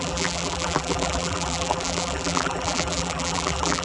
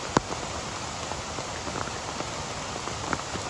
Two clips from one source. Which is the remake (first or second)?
first